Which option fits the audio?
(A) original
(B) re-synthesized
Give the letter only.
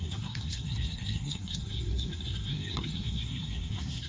B